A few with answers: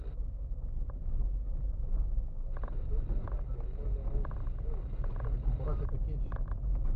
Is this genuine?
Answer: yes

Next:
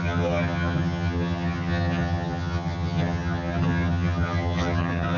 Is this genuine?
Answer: no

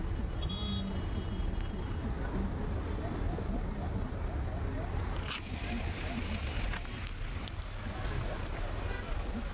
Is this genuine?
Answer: yes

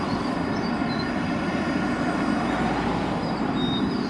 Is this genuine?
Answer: yes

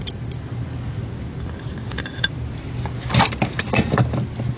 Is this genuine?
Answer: yes